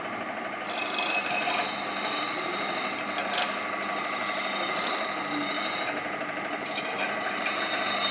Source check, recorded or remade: recorded